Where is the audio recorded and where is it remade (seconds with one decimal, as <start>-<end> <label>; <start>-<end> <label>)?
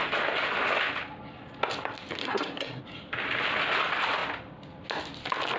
0.0-2.2 recorded; 2.2-2.8 remade; 2.8-5.6 recorded